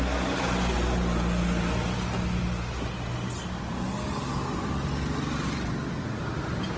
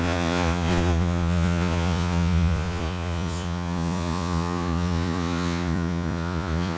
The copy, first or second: second